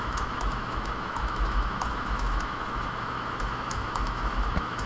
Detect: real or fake fake